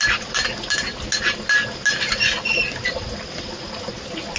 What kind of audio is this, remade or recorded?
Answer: recorded